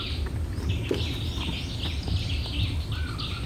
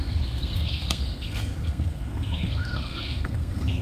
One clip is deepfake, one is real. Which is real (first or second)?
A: first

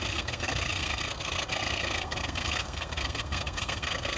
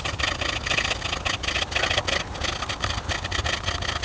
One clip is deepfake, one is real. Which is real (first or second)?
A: second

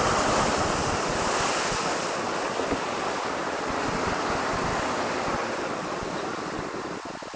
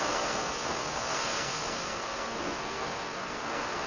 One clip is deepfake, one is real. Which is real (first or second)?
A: first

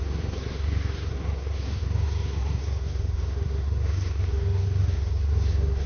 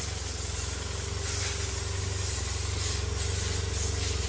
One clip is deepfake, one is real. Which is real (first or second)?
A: second